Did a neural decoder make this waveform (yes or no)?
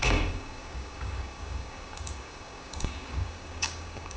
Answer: yes